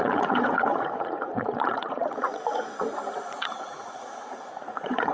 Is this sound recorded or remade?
remade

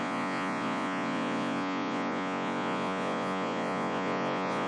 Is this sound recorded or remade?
remade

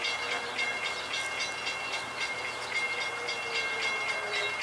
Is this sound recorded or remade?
recorded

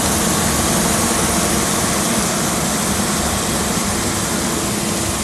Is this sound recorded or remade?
recorded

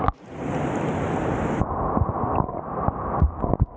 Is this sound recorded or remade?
recorded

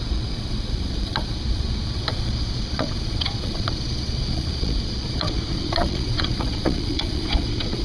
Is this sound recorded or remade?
remade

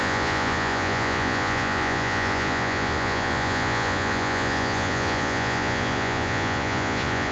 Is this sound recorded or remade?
remade